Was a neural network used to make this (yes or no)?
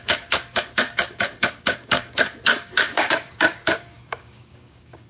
yes